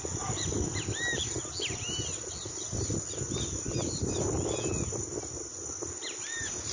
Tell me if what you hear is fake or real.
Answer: real